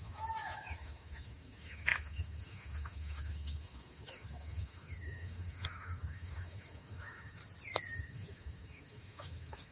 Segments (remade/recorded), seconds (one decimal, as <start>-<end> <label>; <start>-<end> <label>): 0.0-7.4 remade; 7.4-8.0 recorded; 8.0-9.7 remade

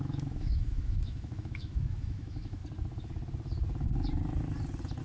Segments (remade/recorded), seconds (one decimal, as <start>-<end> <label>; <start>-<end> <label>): 0.0-2.6 remade; 2.6-5.0 recorded